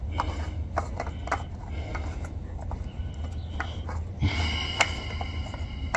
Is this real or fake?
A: real